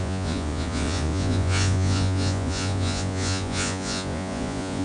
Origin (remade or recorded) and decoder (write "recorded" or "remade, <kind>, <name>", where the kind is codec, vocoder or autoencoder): remade, vocoder, Vocos